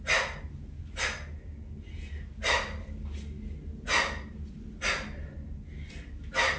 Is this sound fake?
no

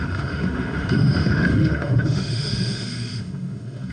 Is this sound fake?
yes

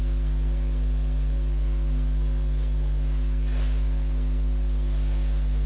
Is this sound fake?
yes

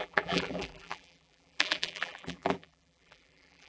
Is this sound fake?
yes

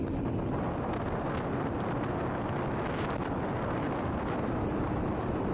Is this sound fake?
no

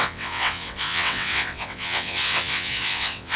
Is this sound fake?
yes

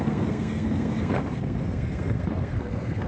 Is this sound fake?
yes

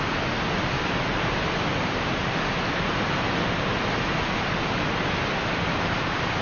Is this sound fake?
no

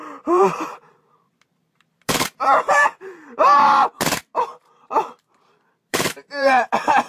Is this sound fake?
yes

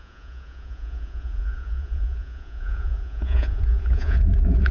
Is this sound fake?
yes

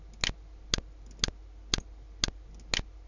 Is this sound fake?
no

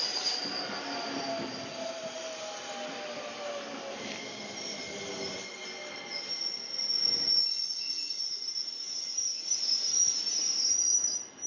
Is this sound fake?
no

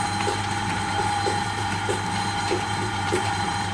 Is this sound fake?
yes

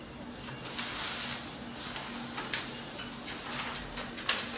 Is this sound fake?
no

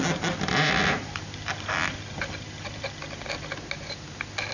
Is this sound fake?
no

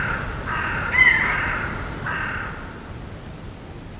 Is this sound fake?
no